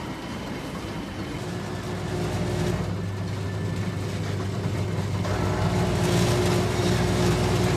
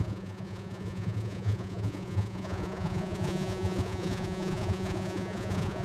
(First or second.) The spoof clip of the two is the second